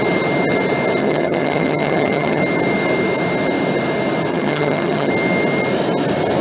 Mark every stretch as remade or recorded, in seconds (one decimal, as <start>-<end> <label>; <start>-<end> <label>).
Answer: 0.0-1.0 recorded; 1.0-2.4 remade; 2.4-4.3 recorded; 4.3-5.1 remade; 5.1-6.4 recorded